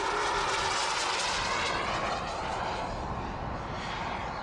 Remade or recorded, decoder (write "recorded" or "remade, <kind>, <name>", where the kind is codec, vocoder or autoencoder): recorded